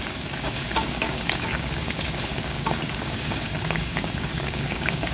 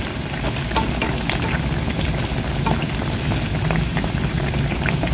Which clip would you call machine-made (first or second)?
first